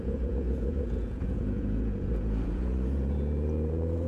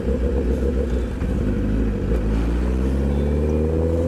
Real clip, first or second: second